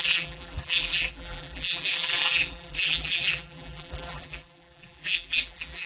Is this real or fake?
fake